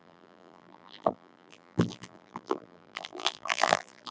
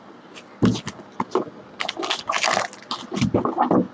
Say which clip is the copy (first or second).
first